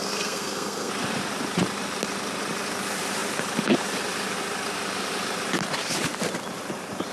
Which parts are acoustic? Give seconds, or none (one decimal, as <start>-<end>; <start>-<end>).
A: 0.9-7.1